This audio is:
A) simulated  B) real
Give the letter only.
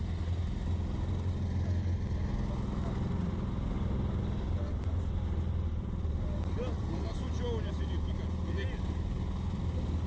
B